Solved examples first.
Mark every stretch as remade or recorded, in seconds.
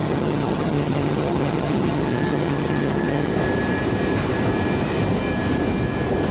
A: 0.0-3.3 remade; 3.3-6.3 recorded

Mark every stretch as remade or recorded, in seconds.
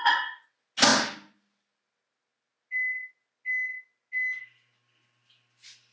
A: 0.0-5.9 recorded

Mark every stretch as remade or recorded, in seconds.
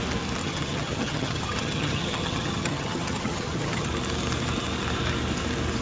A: 0.0-0.4 recorded; 0.4-3.9 remade; 3.9-5.8 recorded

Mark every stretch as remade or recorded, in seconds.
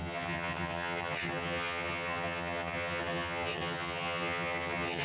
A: 0.0-5.0 remade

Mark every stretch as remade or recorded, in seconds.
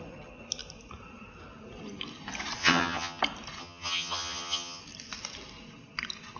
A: 0.0-2.6 recorded; 2.6-3.2 remade; 3.2-3.6 recorded; 3.6-4.8 remade; 4.8-6.4 recorded